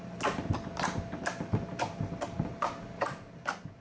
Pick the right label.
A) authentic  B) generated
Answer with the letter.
A